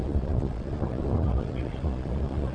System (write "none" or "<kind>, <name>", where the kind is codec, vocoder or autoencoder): vocoder, Vocos